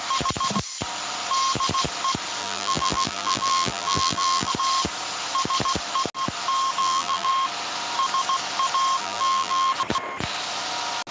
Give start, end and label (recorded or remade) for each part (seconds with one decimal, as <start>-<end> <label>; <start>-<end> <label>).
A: 0.0-2.4 recorded; 2.4-4.5 remade; 4.5-6.8 recorded; 6.8-7.3 remade; 7.3-9.0 recorded; 9.0-9.7 remade; 9.7-11.1 recorded

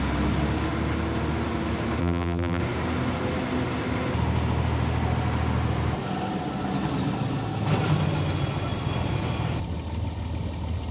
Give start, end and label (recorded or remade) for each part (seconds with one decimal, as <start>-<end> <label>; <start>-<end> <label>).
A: 0.0-2.0 recorded; 2.0-2.6 remade; 2.6-10.9 recorded

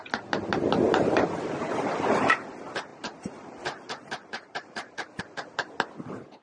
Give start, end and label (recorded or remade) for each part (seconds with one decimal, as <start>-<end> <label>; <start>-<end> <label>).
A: 0.0-2.9 recorded; 2.9-5.2 remade; 5.2-6.4 recorded

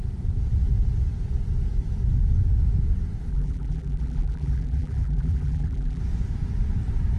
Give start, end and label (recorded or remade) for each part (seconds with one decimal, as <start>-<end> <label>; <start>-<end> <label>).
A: 0.0-3.3 recorded; 3.3-6.0 remade; 6.0-7.2 recorded

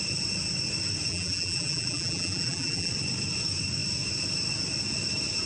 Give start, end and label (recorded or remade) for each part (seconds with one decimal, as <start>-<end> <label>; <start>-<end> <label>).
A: 0.0-1.1 recorded; 1.1-2.9 remade; 2.9-5.5 recorded

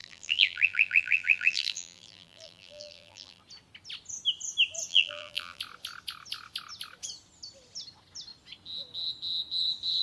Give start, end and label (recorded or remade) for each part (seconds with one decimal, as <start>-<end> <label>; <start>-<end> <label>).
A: 0.0-3.4 remade; 3.4-4.9 recorded; 4.9-5.6 remade; 5.6-10.0 recorded